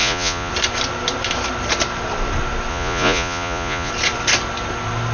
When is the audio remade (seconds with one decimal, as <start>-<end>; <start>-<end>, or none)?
0.0-0.5; 2.7-3.9